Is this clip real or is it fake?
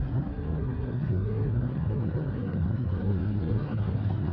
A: fake